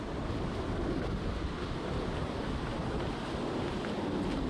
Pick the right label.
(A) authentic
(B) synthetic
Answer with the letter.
A